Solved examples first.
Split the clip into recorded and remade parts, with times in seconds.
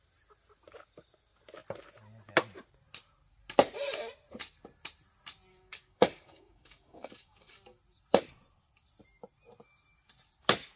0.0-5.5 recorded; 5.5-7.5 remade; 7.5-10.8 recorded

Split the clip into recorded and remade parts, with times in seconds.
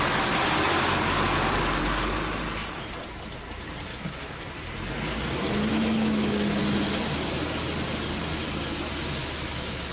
0.0-3.9 recorded; 3.9-4.5 remade; 4.5-5.7 recorded; 5.7-6.6 remade; 6.6-9.2 recorded; 9.2-9.9 remade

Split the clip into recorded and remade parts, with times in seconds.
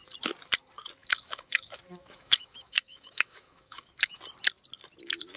0.0-1.0 recorded; 1.0-4.2 remade; 4.2-5.4 recorded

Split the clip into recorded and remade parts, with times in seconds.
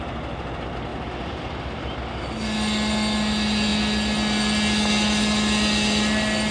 0.0-6.5 recorded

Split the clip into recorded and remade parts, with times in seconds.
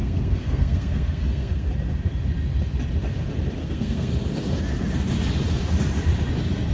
0.0-1.7 remade; 1.7-3.6 recorded; 3.6-4.1 remade; 4.1-6.7 recorded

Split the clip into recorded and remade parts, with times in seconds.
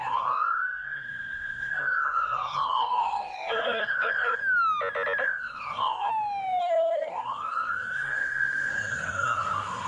0.0-4.4 remade; 4.4-5.2 recorded; 5.2-6.1 remade; 6.1-6.6 recorded; 6.6-9.9 remade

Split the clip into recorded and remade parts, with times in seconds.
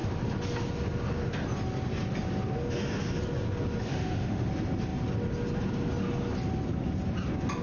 0.0-3.9 recorded; 3.9-4.5 remade; 4.5-7.6 recorded